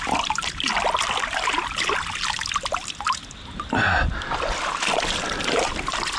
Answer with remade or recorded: recorded